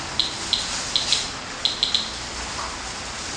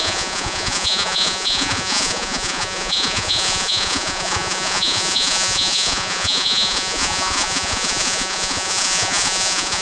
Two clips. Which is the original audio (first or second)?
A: first